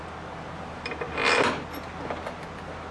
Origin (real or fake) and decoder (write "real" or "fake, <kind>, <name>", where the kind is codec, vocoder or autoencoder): real